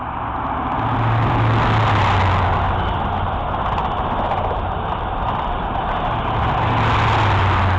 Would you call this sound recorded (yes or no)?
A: yes